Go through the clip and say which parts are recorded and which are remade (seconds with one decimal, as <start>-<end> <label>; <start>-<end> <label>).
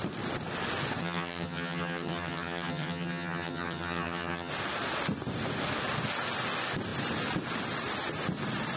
0.0-1.0 recorded; 1.0-4.5 remade; 4.5-8.8 recorded